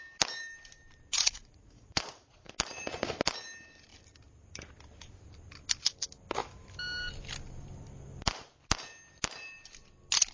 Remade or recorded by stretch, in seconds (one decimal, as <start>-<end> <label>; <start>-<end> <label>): 0.0-1.1 recorded; 1.1-2.5 remade; 2.5-10.3 recorded